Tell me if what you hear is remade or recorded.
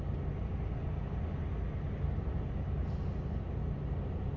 recorded